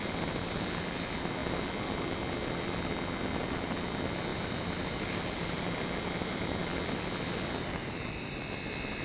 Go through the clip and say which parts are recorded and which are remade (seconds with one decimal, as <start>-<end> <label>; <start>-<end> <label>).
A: 0.0-4.3 recorded; 4.3-5.6 remade; 5.6-7.8 recorded; 7.8-8.4 remade; 8.4-9.0 recorded

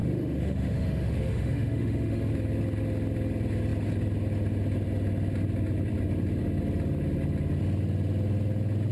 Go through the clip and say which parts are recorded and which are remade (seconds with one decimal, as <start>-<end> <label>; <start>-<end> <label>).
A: 0.0-2.3 remade; 2.3-8.9 recorded